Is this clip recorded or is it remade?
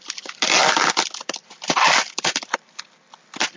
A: recorded